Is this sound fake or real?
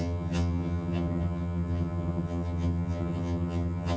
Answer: fake